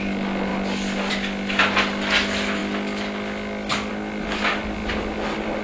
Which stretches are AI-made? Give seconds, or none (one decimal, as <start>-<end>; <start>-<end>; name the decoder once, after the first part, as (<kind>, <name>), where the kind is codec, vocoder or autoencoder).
none